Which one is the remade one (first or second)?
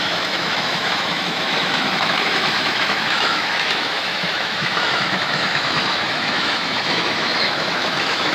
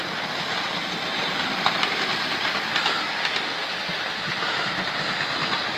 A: first